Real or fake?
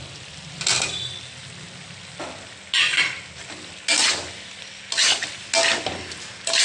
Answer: real